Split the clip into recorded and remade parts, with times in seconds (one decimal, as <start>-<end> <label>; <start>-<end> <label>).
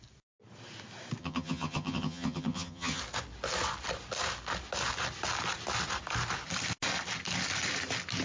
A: 0.0-1.2 recorded; 1.2-3.0 remade; 3.0-8.2 recorded